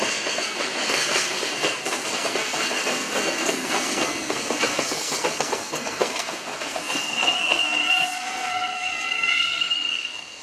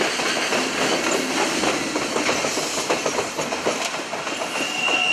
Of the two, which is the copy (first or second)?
first